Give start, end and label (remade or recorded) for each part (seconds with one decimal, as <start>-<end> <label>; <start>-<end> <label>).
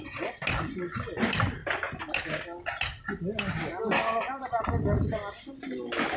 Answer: 0.0-6.2 recorded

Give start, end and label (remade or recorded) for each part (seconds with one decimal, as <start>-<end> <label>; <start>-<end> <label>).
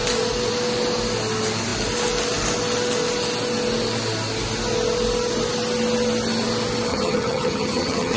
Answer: 0.0-6.9 recorded; 6.9-8.2 remade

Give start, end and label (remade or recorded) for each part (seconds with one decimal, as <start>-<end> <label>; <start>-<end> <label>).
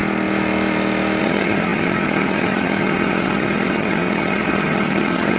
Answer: 0.0-1.2 recorded; 1.2-5.4 remade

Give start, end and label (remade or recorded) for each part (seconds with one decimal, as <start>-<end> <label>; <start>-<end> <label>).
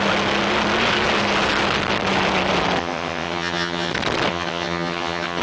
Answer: 0.0-2.8 recorded; 2.8-3.9 remade; 3.9-4.3 recorded; 4.3-5.4 remade